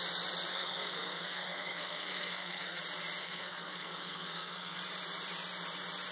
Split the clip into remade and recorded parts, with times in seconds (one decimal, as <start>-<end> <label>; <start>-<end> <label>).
0.0-0.5 recorded; 0.5-2.8 remade; 2.8-3.2 recorded; 3.2-4.8 remade; 4.8-6.1 recorded